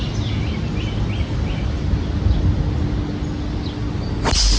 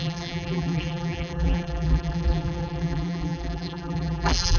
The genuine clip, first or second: first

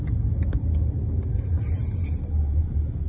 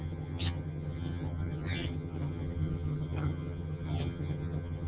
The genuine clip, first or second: first